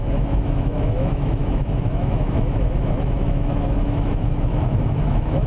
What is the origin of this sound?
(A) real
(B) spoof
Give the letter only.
B